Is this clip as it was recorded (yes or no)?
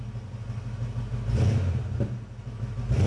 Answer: yes